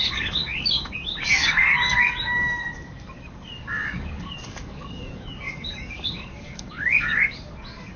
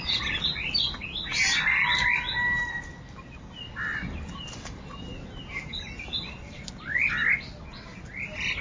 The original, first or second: second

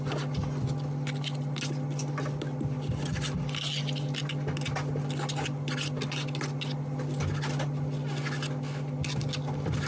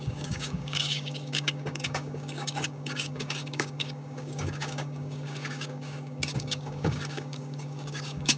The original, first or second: first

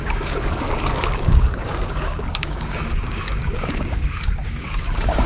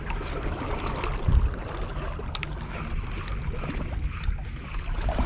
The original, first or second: second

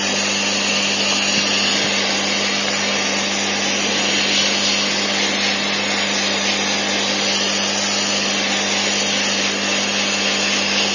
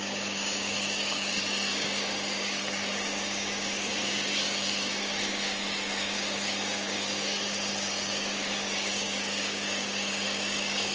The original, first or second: first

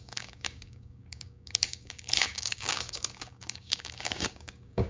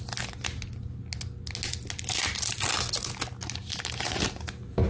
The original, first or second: second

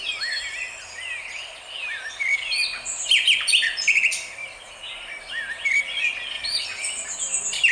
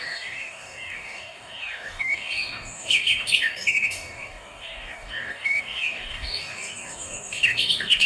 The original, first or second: first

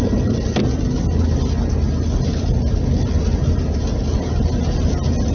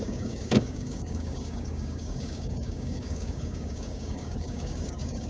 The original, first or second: first